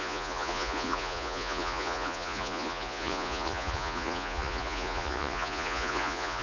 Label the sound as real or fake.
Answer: fake